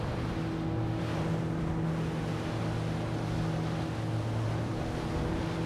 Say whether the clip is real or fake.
real